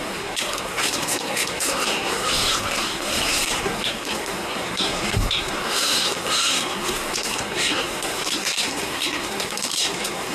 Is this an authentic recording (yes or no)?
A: no